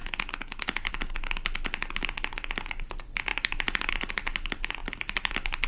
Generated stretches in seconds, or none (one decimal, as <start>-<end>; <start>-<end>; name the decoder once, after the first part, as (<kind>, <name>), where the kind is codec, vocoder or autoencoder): none